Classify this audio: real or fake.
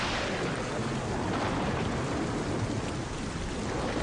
real